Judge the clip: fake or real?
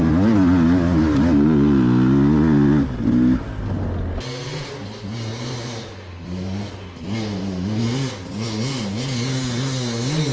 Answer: real